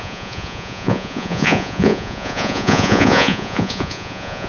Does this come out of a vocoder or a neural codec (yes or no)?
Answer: yes